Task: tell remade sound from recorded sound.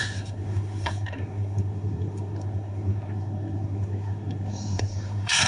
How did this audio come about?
remade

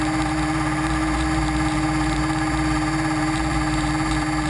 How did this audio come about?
remade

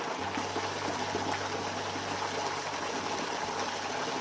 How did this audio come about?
recorded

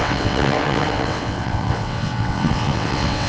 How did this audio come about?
remade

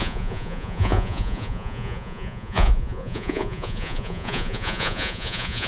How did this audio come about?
remade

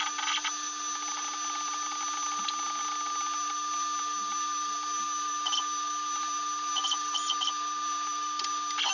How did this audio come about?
recorded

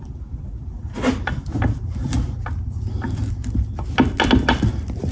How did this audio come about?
recorded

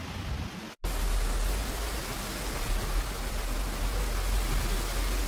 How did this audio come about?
recorded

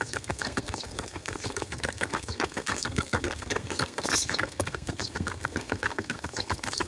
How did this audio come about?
remade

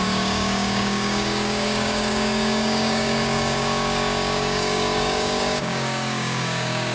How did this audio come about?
remade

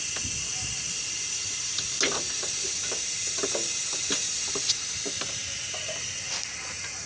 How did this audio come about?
recorded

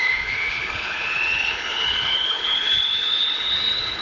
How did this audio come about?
remade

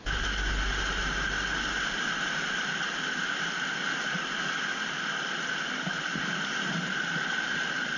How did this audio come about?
recorded